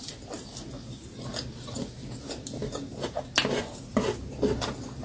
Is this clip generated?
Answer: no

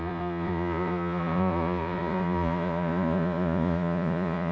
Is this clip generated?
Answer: yes